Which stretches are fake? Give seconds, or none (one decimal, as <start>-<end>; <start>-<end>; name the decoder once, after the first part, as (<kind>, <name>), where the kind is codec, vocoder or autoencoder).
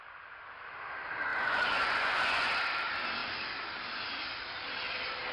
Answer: 1.3-2.5 (vocoder, Vocos)